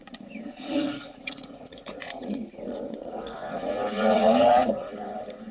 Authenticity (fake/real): fake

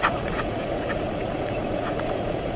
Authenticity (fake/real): fake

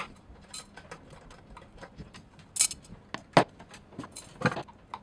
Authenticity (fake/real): real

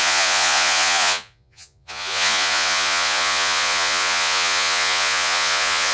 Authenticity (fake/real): fake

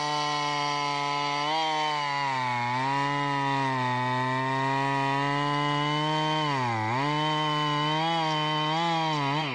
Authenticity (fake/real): real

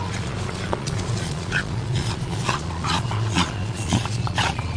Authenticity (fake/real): fake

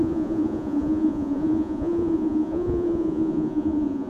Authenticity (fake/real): fake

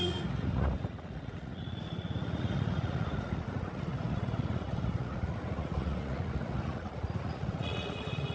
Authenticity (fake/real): fake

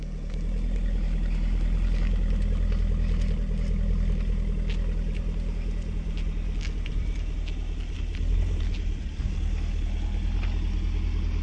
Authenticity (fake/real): real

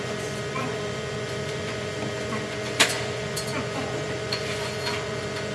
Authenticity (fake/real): fake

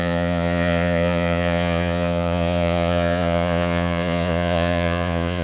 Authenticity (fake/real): fake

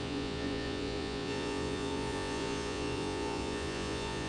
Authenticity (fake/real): fake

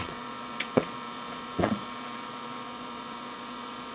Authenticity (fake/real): fake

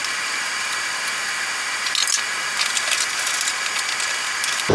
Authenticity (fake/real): real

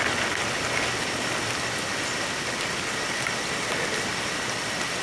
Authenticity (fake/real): real